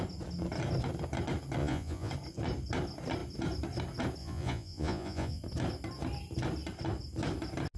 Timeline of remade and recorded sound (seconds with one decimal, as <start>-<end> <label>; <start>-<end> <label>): 0.0-1.6 recorded; 1.6-2.1 remade; 2.1-4.2 recorded; 4.2-5.4 remade; 5.4-7.8 recorded